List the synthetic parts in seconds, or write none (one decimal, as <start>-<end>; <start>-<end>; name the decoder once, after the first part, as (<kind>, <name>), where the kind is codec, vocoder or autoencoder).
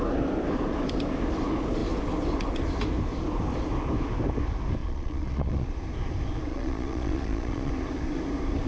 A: 4.8-5.7 (vocoder, Vocos); 6.5-7.7